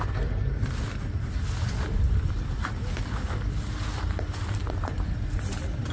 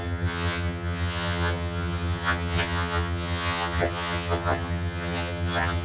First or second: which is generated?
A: second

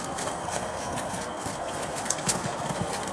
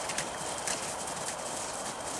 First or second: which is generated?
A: first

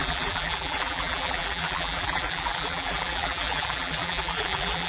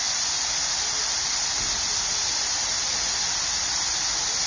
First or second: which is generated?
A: first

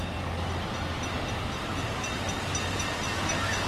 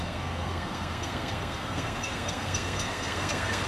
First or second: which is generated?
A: second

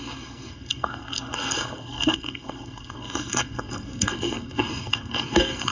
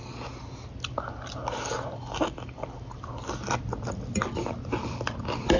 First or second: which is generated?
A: first